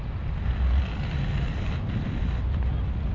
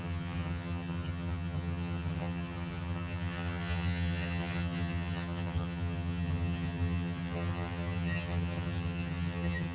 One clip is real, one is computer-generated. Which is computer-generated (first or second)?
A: second